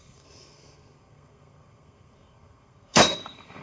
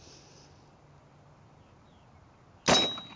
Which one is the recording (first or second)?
second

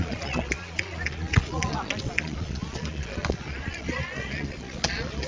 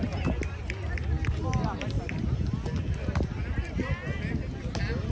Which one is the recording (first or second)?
second